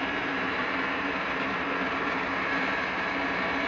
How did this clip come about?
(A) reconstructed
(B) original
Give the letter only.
A